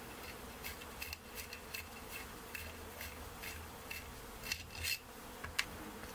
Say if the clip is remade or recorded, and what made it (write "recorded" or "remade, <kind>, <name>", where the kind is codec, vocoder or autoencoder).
recorded